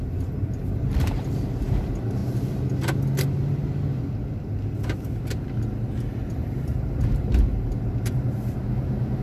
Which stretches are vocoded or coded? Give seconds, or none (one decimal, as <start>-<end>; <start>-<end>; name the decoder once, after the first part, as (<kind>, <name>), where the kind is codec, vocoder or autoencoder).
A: 0.0-2.2 (vocoder, BigVGAN v2); 6.3-9.2